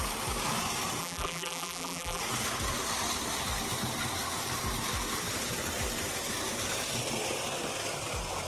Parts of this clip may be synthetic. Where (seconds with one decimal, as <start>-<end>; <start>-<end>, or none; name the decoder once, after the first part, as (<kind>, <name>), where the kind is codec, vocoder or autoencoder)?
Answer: 1.0-2.2 (vocoder, BigVGAN v2)